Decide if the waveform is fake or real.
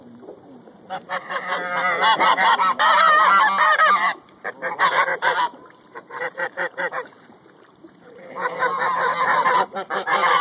fake